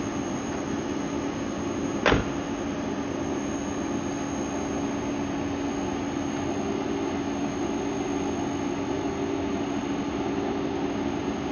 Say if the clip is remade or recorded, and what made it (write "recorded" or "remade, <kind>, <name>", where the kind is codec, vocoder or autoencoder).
recorded